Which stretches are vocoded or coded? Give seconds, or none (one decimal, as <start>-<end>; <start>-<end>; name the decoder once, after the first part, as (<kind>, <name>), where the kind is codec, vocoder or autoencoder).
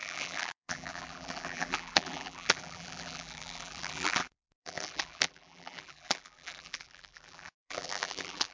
0.0-8.5 (vocoder, BigVGAN v2)